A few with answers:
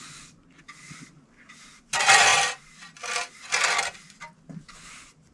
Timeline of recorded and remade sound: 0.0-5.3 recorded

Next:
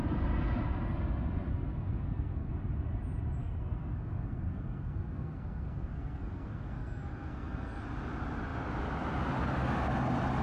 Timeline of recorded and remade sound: 0.0-1.5 recorded; 1.5-2.5 remade; 2.5-3.4 recorded; 3.4-7.8 remade; 7.8-10.4 recorded

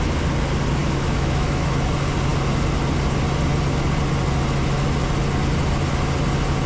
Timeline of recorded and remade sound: 0.0-0.8 recorded; 0.8-1.8 remade; 1.8-6.7 recorded

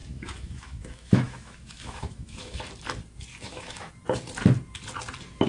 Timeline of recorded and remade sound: 0.0-2.6 remade; 2.6-3.3 recorded; 3.3-3.9 remade; 3.9-5.5 recorded